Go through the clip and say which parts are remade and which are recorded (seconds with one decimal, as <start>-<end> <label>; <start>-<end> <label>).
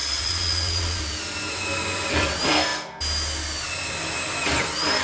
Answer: 0.0-1.0 remade; 1.0-5.0 recorded